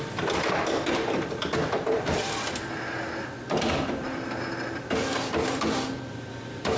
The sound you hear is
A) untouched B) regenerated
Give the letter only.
B